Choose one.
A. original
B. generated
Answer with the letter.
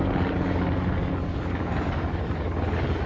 B